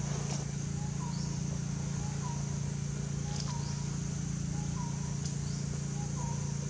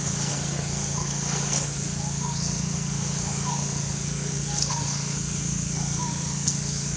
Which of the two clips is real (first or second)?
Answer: first